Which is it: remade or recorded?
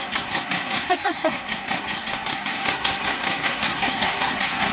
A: remade